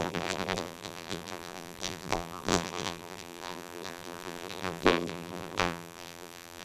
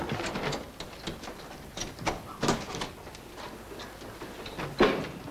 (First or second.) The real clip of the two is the second